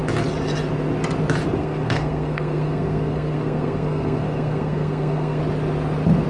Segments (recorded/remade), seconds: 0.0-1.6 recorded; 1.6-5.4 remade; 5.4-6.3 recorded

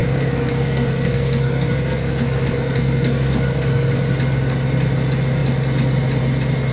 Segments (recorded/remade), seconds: 0.0-4.0 remade; 4.0-6.7 recorded

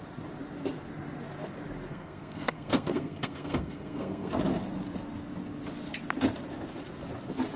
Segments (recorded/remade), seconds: 0.0-1.9 recorded; 1.9-4.3 remade; 4.3-7.6 recorded

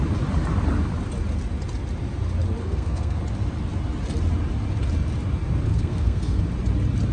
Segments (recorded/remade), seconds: 0.0-2.6 recorded; 2.6-3.2 remade; 3.2-5.7 recorded; 5.7-6.4 remade; 6.4-7.1 recorded

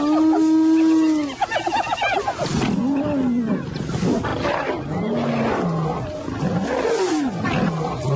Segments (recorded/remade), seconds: 0.0-8.2 recorded

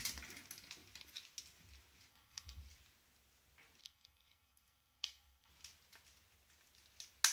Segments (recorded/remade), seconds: 0.0-2.1 recorded; 2.1-2.6 remade; 2.6-3.8 recorded; 3.8-5.5 remade; 5.5-7.3 recorded

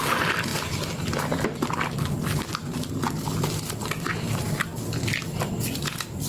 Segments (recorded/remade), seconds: 0.0-6.3 recorded